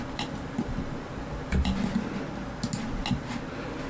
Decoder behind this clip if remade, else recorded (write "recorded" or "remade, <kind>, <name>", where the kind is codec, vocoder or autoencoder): recorded